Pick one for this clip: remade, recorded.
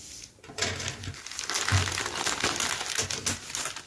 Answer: recorded